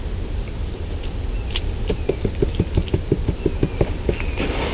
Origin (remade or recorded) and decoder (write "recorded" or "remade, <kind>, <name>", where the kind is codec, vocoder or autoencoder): recorded